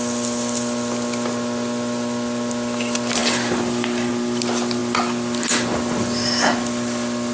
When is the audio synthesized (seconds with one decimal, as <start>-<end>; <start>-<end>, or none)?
3.2-4.1